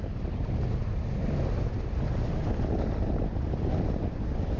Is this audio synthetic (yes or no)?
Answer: no